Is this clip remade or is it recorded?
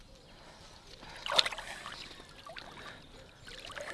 recorded